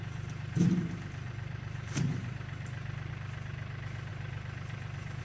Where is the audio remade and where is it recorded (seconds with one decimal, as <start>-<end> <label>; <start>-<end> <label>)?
0.0-3.1 remade; 3.1-4.1 recorded; 4.1-5.2 remade